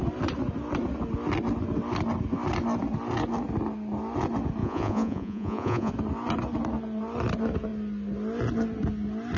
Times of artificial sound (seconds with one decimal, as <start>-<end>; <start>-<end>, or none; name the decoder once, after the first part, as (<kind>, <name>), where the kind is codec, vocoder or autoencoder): 4.6-5.9 (vocoder, Vocos)